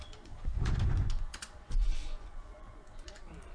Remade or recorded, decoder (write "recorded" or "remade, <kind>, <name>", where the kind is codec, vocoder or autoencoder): remade, vocoder, Vocos